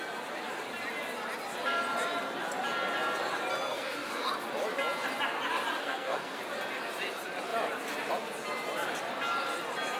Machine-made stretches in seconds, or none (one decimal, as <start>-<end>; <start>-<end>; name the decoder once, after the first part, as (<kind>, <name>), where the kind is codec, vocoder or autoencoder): 3.7-4.3 (codec, SNAC); 5.8-6.4